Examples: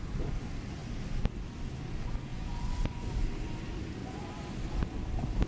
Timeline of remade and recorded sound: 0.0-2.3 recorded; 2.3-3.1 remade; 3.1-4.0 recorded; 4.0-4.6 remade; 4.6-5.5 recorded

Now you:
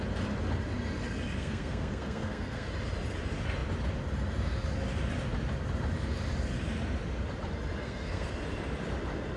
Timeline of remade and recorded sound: 0.0-1.4 recorded; 1.4-2.7 remade; 2.7-7.8 recorded; 7.8-8.3 remade; 8.3-9.4 recorded

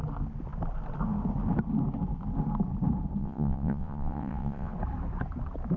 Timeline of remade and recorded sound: 0.0-3.2 recorded; 3.2-4.7 remade; 4.7-5.8 recorded

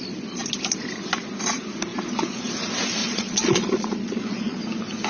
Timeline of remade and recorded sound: 0.0-1.9 recorded; 1.9-2.5 remade; 2.5-3.0 recorded; 3.0-4.6 remade; 4.6-5.1 recorded

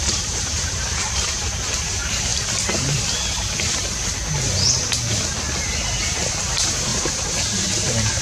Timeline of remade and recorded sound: 0.0-2.3 remade; 2.3-6.3 recorded; 6.3-8.2 remade

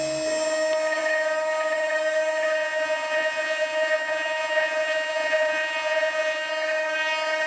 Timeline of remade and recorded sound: 0.0-2.6 recorded; 2.6-6.5 remade; 6.5-7.5 recorded